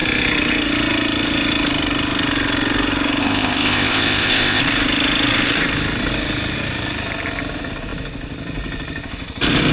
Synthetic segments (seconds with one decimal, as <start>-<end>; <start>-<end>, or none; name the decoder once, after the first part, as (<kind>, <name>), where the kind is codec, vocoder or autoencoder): 3.2-4.6 (codec, ZipCodec)